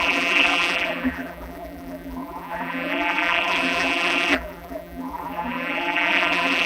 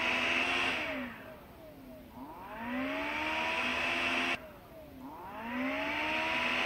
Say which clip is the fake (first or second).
first